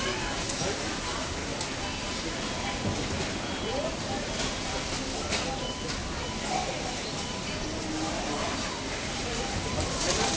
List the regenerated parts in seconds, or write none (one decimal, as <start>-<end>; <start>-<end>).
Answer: 0.0-1.4; 3.4-6.0; 8.5-10.4